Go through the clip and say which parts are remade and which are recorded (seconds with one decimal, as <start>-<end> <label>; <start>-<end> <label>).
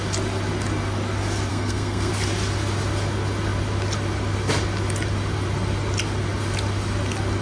0.0-1.5 recorded; 1.5-2.1 remade; 2.1-7.4 recorded